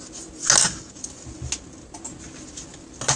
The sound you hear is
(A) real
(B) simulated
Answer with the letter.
A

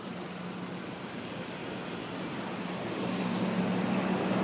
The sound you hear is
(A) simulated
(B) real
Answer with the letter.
B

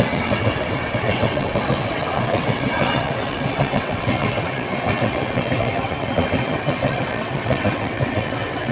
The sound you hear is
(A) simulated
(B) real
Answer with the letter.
A